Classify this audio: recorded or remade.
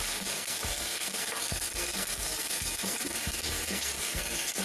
remade